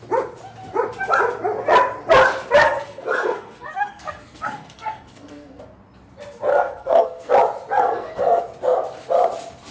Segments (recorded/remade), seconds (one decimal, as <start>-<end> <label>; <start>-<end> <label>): 0.0-2.6 recorded; 2.6-5.6 remade; 5.6-6.5 recorded; 6.5-7.3 remade; 7.3-7.8 recorded; 7.8-8.4 remade; 8.4-9.7 recorded